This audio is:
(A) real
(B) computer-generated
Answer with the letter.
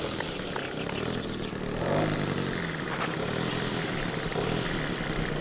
A